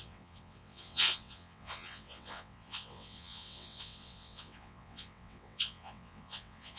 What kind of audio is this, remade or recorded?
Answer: remade